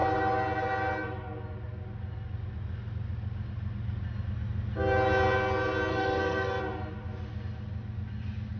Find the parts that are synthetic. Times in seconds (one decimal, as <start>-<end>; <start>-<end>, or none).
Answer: 5.9-6.6